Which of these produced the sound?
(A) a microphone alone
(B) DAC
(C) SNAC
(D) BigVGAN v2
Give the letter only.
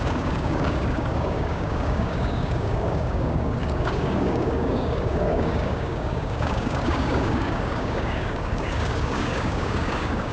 B